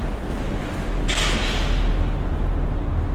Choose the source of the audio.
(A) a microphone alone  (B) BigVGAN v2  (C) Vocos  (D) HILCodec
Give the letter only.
A